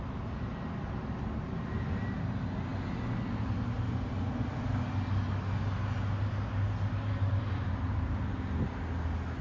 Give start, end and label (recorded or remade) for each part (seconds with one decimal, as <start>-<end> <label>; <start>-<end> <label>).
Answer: 0.0-9.4 recorded